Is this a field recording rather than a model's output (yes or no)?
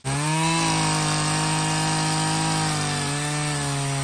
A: yes